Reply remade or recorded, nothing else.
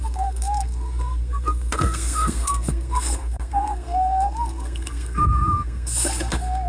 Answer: remade